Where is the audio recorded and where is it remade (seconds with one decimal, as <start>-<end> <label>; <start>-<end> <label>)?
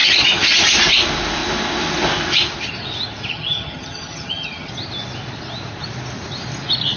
0.0-0.5 remade; 0.5-3.3 recorded; 3.3-4.7 remade; 4.7-7.0 recorded